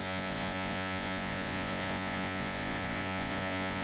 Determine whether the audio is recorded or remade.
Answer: remade